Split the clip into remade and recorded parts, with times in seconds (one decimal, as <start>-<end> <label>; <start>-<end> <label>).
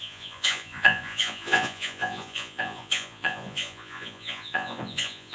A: 0.0-5.3 remade